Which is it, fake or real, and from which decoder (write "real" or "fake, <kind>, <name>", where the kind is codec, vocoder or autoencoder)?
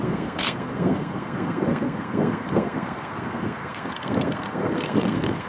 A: fake, codec, SNAC